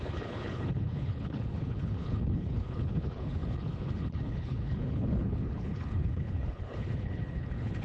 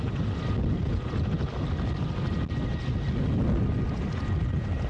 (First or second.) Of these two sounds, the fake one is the first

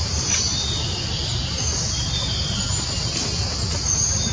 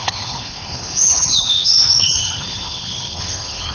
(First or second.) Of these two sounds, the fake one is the second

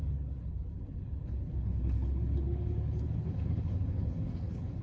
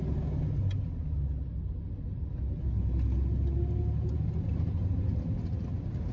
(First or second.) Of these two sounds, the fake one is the first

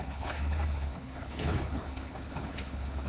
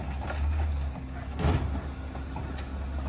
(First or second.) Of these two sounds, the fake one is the first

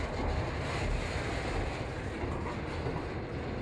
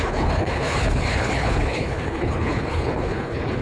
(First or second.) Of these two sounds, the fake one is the second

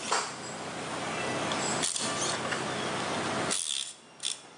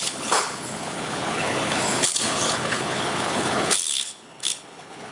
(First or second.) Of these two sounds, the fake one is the second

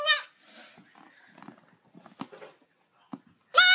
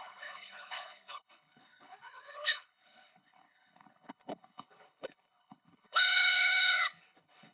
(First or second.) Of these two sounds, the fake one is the second